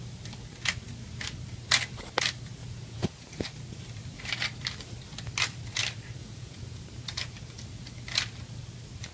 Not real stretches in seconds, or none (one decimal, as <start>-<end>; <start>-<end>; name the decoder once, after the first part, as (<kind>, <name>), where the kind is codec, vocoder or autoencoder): 2.6-3.3 (vocoder, Vocos); 6.2-6.8